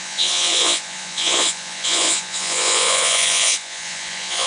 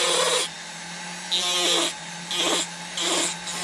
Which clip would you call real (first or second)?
second